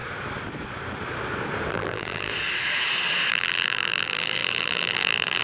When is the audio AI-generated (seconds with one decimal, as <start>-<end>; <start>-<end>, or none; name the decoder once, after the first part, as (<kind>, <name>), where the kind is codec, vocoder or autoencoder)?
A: 1.7-2.3 (vocoder, BigVGAN v2); 3.3-5.4

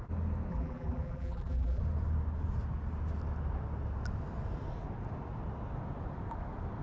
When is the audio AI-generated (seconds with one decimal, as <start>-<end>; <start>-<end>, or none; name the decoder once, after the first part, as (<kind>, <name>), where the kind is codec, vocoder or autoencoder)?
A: 0.5-1.8 (vocoder, BigVGAN v2)